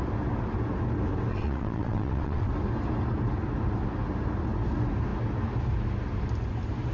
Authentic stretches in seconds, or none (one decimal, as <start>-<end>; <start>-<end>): 0.0-1.3; 2.5-6.9